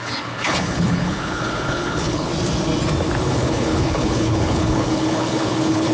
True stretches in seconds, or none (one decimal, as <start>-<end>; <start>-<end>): 2.3-3.2